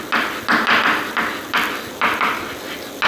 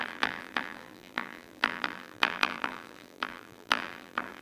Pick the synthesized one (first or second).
second